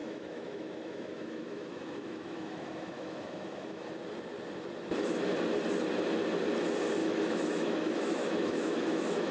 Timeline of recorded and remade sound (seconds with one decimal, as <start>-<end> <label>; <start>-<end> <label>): 0.0-3.9 remade; 3.9-7.0 recorded; 7.0-9.3 remade